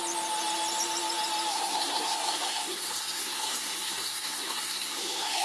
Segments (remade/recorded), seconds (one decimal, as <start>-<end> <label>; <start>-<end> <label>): 0.0-1.5 recorded; 1.5-5.4 remade